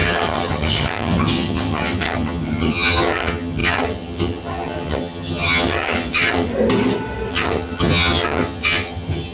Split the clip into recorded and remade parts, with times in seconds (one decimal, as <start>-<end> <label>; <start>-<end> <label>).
0.0-6.5 remade; 6.5-7.3 recorded; 7.3-9.3 remade